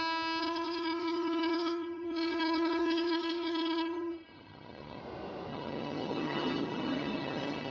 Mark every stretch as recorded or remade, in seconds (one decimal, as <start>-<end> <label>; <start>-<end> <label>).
0.0-0.4 recorded; 0.4-5.0 remade; 5.0-5.5 recorded; 5.5-7.7 remade